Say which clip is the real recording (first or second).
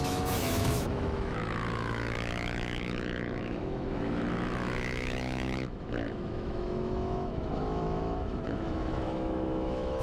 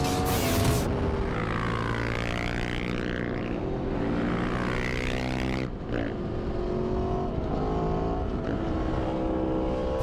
second